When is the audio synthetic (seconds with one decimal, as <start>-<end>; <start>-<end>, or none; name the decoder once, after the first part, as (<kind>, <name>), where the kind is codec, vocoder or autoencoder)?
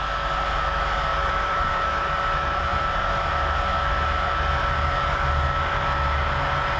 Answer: 1.1-1.8 (vocoder, BigVGAN v2); 2.7-3.3